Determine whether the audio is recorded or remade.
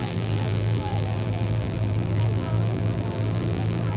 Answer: remade